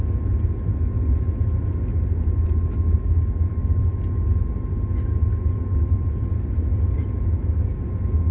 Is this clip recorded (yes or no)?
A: yes